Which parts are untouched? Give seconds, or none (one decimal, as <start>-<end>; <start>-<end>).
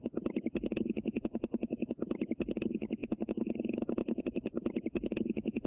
0.0-5.7